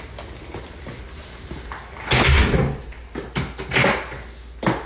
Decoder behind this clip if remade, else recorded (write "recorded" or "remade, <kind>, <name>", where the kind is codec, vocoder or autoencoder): recorded